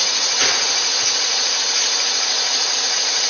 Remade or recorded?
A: remade